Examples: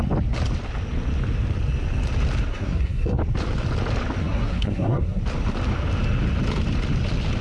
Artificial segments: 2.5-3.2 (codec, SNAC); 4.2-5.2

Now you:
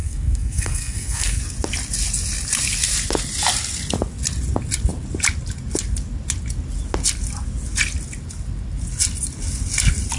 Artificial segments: 0.0-1.4 (codec, SNAC)

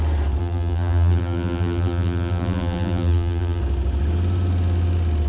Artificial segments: 0.4-3.6 (vocoder, BigVGAN v2)

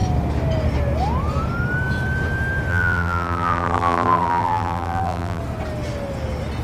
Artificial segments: 2.7-5.4 (vocoder, BigVGAN v2)

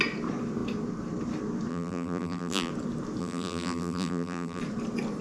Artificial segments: 1.7-2.7 (vocoder, BigVGAN v2); 3.2-4.6

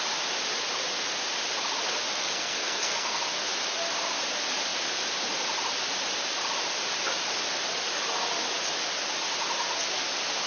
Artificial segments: 2.2-3.2 (codec, SNAC)

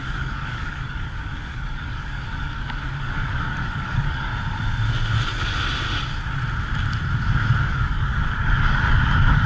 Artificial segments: 0.0-4.3 (codec, DAC); 7.6-9.5

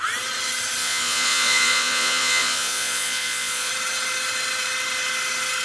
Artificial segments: 0.8-3.7 (vocoder, Vocos)